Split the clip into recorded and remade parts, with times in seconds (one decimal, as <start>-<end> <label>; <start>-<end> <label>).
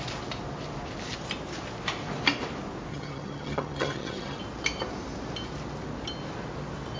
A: 0.0-2.9 recorded; 2.9-4.4 remade; 4.4-7.0 recorded